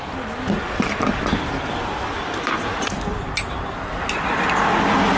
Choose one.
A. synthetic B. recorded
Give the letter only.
B